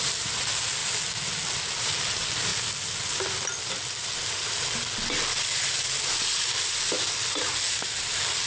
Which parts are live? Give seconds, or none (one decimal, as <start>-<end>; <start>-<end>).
0.8-1.8; 2.5-7.3